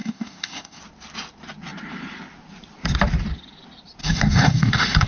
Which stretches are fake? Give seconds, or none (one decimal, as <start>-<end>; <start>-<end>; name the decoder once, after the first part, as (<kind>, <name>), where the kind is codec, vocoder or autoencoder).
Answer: 0.0-0.8 (autoencoder, DAC-VAE); 4.0-5.1